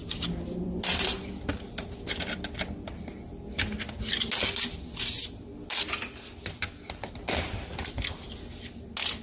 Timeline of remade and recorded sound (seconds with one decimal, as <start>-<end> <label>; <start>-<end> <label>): 0.0-9.2 recorded